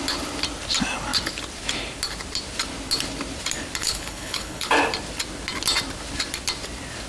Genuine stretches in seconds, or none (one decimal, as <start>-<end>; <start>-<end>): 0.0-3.8; 4.7-7.1